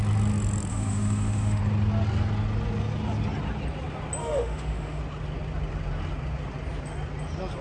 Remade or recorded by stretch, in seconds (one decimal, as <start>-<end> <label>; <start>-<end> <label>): 0.0-0.7 recorded; 0.7-1.6 remade; 1.6-4.2 recorded; 4.2-5.0 remade; 5.0-7.6 recorded